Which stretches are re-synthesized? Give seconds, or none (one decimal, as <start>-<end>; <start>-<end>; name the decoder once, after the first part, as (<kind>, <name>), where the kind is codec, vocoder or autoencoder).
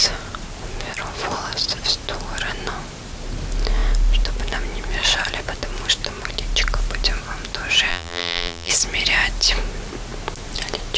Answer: 7.9-8.7 (vocoder, BigVGAN v2)